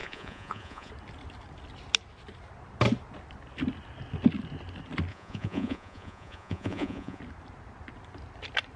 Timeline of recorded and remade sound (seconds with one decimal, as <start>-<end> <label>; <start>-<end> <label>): 0.0-0.9 remade; 0.9-5.1 recorded; 5.1-7.2 remade; 7.2-8.8 recorded